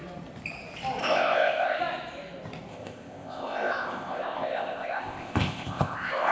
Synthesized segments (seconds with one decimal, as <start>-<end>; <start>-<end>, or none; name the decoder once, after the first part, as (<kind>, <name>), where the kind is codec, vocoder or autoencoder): 1.0-1.8 (codec, ZipCodec); 2.7-6.3